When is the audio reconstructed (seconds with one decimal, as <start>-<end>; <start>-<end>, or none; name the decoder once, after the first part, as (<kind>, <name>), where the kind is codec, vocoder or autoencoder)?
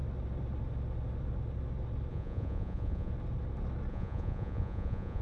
2.1-3.1 (vocoder, Vocos); 3.9-5.2